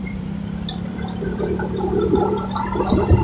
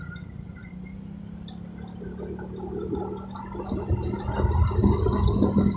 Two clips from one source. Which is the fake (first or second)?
first